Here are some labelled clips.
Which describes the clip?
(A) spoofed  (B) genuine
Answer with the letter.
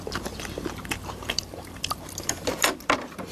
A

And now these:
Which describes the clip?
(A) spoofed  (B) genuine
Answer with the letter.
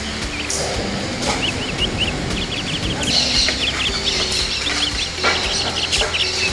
B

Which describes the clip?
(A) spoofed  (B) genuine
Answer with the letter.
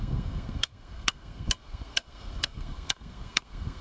A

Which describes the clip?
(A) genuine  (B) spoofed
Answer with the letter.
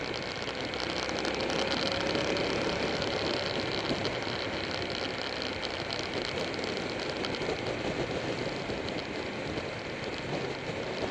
A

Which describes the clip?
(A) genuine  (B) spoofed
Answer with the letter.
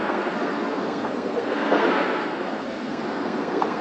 B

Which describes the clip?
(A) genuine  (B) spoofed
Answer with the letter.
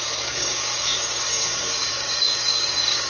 B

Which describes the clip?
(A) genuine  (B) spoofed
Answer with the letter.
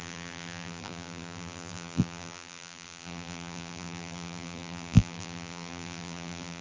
B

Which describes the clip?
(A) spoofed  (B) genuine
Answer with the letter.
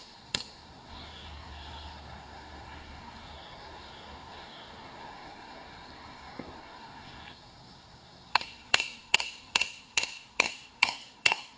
A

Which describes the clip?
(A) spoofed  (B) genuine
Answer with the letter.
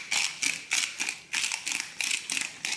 B